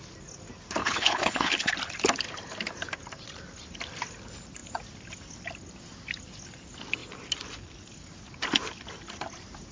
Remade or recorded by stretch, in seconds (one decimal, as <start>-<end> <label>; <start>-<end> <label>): 0.0-0.8 recorded; 0.8-1.7 remade; 1.7-9.7 recorded

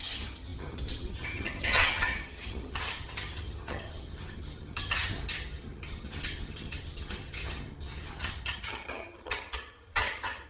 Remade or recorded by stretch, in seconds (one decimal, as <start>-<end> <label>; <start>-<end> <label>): 0.0-10.5 remade

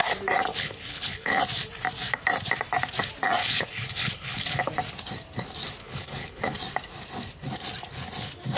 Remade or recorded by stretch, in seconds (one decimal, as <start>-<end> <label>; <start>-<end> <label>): 0.0-0.5 recorded; 0.5-1.4 remade; 1.4-3.4 recorded; 3.4-4.7 remade; 4.7-5.8 recorded; 5.8-6.6 remade; 6.6-8.6 recorded

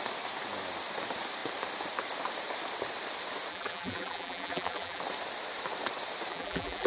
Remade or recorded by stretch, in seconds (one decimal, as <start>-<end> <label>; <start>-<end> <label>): 0.0-3.5 recorded; 3.5-5.0 remade; 5.0-6.3 recorded; 6.3-6.9 remade

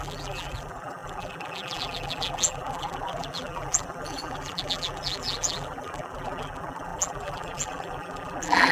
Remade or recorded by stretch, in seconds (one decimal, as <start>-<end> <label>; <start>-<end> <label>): 0.0-8.7 remade

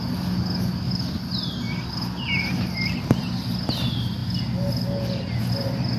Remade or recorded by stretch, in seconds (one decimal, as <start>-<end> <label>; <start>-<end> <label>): 0.0-6.0 recorded

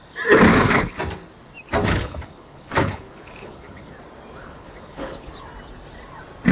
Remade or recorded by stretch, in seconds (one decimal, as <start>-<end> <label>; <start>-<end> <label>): 0.0-0.5 recorded; 0.5-1.0 remade; 1.0-1.8 recorded; 1.8-3.9 remade; 3.9-4.4 recorded; 4.4-5.3 remade; 5.3-6.5 recorded